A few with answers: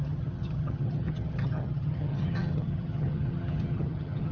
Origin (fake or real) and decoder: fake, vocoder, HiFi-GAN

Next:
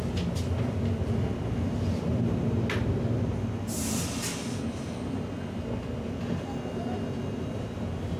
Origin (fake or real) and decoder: real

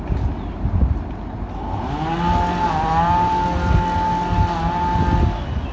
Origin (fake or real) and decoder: real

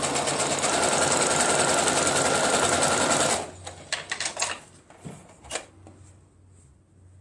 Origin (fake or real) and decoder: fake, vocoder, BigVGAN v2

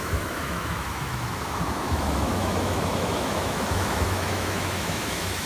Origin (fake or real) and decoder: fake, autoencoder, DAC-VAE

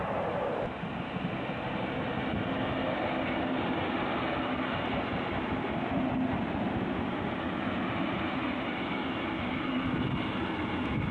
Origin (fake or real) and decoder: real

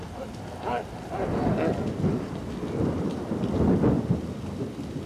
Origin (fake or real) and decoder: real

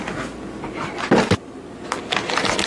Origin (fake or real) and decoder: real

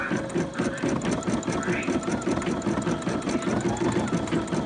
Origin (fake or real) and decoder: real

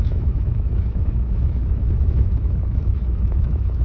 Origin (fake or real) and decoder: fake, autoencoder, DAC-VAE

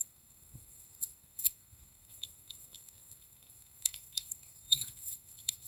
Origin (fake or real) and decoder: fake, codec, SNAC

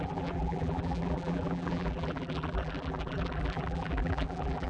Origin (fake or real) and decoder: fake, vocoder, BigVGAN v2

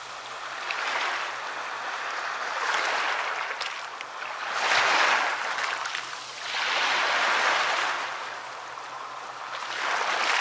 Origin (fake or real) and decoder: real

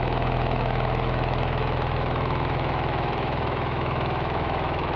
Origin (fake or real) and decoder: fake, autoencoder, DAC-VAE